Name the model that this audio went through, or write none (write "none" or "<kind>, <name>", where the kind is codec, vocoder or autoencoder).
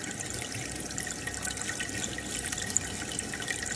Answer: none